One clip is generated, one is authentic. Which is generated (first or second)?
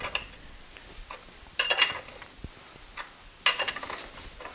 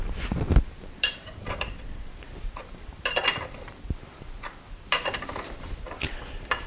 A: second